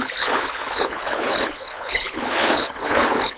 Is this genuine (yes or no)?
no